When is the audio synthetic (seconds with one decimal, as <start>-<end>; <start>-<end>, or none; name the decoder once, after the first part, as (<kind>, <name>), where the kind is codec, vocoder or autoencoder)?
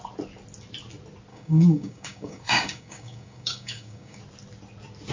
1.3-4.2 (codec, DAC)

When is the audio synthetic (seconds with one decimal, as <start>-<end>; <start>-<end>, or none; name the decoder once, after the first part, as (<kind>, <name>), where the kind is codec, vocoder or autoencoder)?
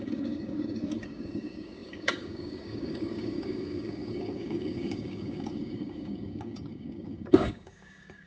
0.0-8.3 (codec, DAC)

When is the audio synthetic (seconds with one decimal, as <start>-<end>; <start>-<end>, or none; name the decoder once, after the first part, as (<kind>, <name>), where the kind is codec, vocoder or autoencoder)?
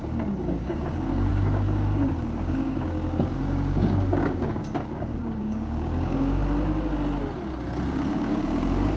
0.0-6.4 (codec, DAC); 7.9-9.0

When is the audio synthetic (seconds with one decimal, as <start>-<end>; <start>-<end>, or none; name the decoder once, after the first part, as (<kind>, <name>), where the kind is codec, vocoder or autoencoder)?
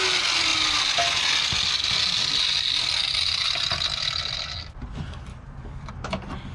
5.3-5.9 (codec, DAC)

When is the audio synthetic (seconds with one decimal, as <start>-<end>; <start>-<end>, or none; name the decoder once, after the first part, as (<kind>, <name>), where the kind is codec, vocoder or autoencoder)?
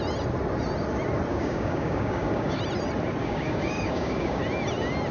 1.3-2.6 (codec, DAC); 3.2-4.4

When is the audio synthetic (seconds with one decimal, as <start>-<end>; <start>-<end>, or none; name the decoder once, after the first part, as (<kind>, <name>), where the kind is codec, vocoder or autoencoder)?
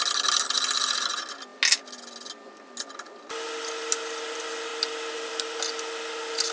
none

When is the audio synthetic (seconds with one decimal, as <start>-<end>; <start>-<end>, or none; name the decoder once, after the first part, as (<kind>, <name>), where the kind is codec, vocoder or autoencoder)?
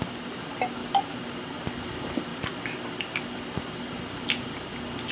none